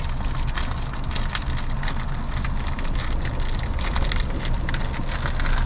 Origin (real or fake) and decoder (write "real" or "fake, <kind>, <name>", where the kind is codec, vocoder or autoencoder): real